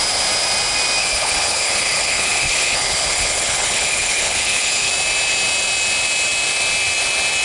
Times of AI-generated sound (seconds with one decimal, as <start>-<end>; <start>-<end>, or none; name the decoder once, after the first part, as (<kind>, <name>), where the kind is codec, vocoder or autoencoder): 1.0-4.9 (codec, HILCodec)